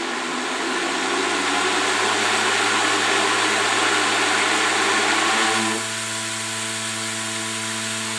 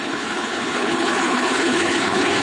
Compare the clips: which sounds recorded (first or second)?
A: first